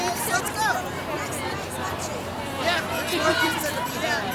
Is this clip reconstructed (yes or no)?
no